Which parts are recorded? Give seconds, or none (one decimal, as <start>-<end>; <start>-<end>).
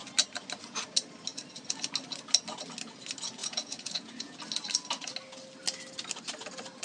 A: 0.0-3.4; 4.4-6.8